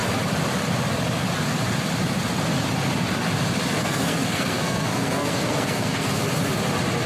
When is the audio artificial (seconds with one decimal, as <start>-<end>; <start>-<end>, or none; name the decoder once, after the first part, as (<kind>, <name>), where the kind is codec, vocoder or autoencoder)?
3.8-6.2 (codec, SNAC)